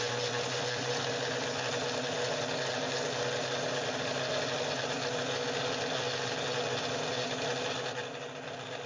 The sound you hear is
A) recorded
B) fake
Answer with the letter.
A